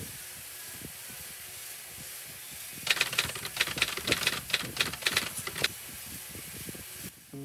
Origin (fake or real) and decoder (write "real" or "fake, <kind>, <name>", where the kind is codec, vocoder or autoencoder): real